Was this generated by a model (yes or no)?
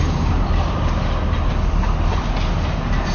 no